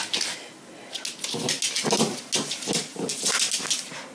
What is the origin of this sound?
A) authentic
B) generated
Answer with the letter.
A